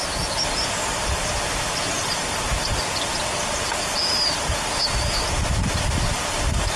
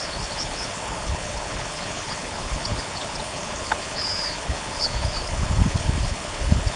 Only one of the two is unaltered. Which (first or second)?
first